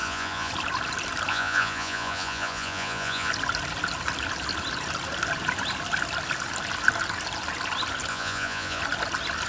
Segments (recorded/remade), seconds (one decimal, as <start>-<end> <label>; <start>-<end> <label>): 0.0-0.5 remade; 0.5-1.3 recorded; 1.3-3.3 remade; 3.3-8.1 recorded; 8.1-8.8 remade; 8.8-9.5 recorded